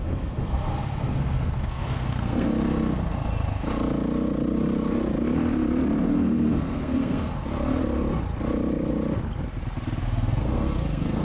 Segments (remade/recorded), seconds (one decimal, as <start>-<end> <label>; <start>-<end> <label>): 0.0-2.5 remade; 2.5-6.0 recorded; 6.0-7.4 remade; 7.4-10.0 recorded; 10.0-11.2 remade